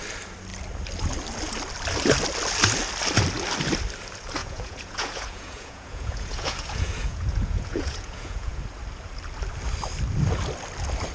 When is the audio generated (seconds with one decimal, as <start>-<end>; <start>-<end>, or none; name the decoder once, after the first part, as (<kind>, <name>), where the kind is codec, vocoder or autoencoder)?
4.4-8.6 (vocoder, Vocos)